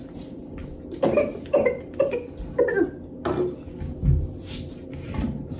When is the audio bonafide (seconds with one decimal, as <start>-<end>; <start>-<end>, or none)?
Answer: 0.0-5.6